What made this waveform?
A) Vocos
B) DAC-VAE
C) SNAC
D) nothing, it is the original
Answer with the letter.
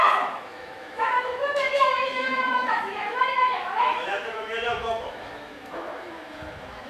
B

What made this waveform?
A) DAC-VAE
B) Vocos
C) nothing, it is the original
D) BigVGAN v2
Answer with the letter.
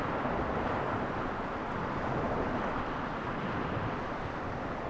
C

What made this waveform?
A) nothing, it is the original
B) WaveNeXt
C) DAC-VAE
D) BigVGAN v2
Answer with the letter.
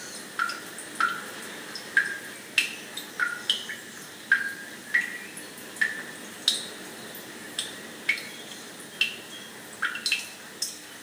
A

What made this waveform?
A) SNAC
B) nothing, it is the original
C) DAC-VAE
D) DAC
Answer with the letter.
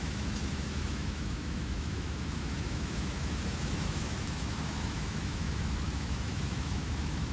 C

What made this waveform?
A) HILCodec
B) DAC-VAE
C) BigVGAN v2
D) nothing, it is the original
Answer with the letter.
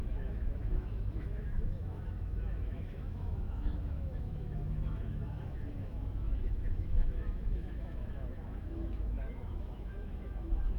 B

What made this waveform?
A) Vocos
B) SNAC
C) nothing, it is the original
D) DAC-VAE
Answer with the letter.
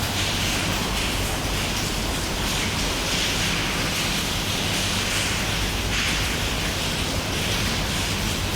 C